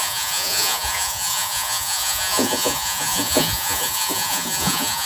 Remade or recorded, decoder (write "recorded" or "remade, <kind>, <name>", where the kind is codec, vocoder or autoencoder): remade, vocoder, Vocos